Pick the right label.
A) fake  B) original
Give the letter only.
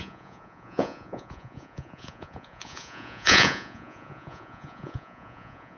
A